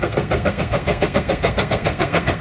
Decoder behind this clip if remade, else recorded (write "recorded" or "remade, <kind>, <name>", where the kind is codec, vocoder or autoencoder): remade, codec, SNAC